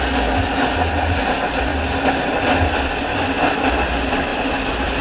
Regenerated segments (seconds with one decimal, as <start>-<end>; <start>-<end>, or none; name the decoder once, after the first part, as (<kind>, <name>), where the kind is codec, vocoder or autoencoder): none